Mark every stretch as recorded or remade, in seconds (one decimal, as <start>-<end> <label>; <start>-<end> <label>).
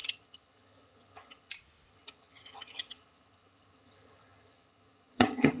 0.0-1.5 remade; 1.5-1.9 recorded; 1.9-5.6 remade